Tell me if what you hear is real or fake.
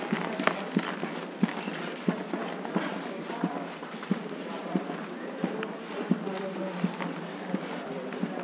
real